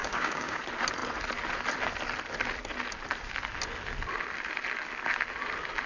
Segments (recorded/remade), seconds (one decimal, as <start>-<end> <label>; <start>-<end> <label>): 0.0-0.6 remade; 0.6-5.9 recorded